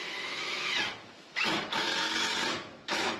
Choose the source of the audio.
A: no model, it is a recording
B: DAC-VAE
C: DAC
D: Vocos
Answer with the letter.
B